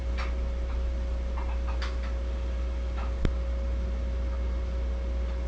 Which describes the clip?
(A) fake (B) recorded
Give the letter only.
B